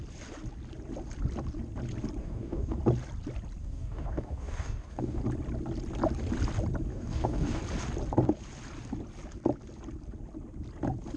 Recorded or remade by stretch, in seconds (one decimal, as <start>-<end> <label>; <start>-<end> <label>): 0.0-2.2 recorded; 2.2-2.8 remade; 2.8-3.6 recorded; 3.6-5.2 remade; 5.2-6.9 recorded; 6.9-7.6 remade; 7.6-11.2 recorded

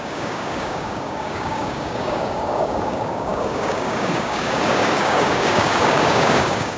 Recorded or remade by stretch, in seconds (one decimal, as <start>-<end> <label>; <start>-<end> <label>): 0.0-6.8 remade

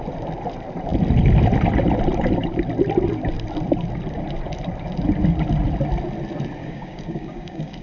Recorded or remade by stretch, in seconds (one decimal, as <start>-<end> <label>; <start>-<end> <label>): 0.0-6.6 recorded; 6.6-7.8 remade

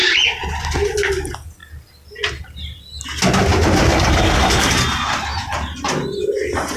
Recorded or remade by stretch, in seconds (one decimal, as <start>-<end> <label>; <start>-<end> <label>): 0.0-3.9 recorded; 3.9-4.7 remade; 4.7-6.8 recorded

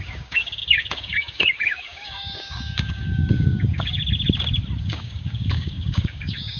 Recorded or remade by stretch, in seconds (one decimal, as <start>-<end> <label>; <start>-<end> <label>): 0.0-4.0 remade; 4.0-4.8 recorded; 4.8-6.6 remade